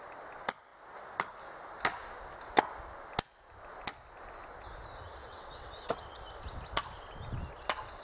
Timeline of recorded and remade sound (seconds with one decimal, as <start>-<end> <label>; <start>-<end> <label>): 0.0-5.2 recorded; 5.2-6.2 remade; 6.2-8.0 recorded